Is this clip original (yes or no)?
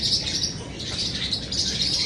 yes